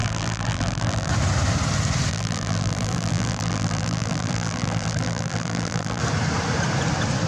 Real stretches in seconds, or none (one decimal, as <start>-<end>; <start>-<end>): 1.1-2.1; 6.0-7.3

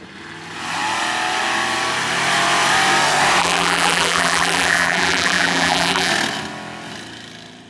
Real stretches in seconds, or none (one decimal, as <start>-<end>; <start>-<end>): 0.0-3.4; 6.1-7.7

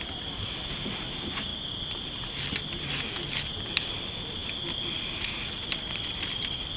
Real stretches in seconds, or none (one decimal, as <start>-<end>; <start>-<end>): 0.0-1.5; 3.9-6.8

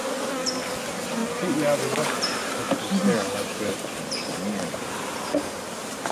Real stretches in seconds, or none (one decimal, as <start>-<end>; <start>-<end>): 0.0-1.2; 4.9-6.1

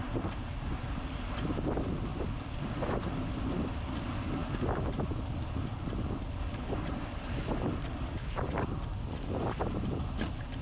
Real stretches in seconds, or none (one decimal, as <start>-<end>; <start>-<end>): 0.0-2.1; 3.3-4.4; 8.8-10.6

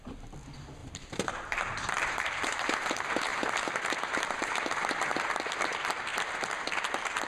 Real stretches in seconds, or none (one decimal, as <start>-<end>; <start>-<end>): 0.0-0.8; 2.9-3.3; 5.2-7.3